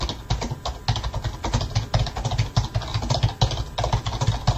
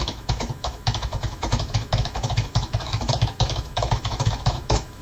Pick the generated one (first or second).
second